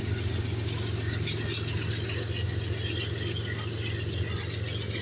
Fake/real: real